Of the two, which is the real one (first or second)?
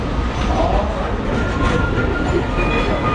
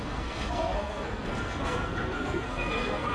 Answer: first